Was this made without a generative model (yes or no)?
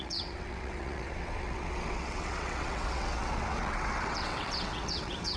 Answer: no